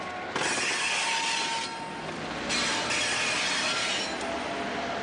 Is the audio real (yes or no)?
yes